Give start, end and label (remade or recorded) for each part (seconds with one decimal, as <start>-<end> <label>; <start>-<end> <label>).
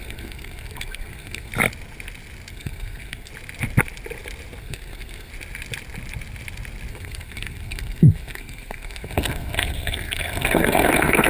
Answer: 0.0-1.5 remade; 1.5-2.5 recorded; 2.5-3.3 remade; 3.3-4.6 recorded; 4.6-5.3 remade; 5.3-6.9 recorded; 6.9-11.3 remade